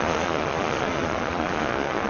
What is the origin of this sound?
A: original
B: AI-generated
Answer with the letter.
B